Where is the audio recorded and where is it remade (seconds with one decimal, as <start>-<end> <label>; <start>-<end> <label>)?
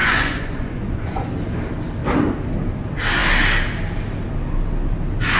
0.0-1.3 remade; 1.3-5.4 recorded